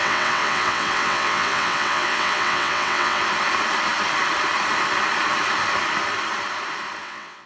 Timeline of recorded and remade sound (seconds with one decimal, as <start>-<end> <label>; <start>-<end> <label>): 0.0-3.2 remade; 3.2-7.0 recorded; 7.0-7.5 remade